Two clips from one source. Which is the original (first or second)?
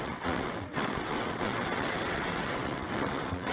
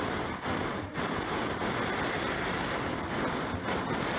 second